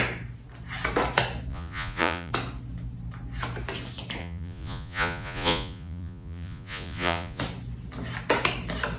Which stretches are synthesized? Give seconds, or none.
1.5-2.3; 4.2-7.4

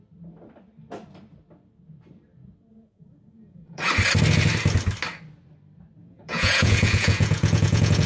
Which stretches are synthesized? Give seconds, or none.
2.7-3.9; 6.0-8.1